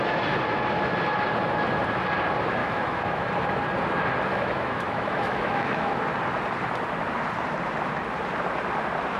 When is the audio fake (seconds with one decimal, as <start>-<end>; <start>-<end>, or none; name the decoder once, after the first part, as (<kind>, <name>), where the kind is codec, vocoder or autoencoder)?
2.6-3.3 (autoencoder, DAC-VAE); 4.3-6.0